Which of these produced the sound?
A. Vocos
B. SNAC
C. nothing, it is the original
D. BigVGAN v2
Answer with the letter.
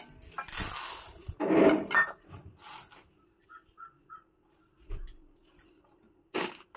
C